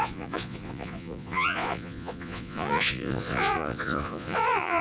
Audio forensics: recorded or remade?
remade